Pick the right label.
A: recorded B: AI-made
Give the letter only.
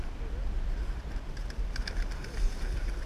A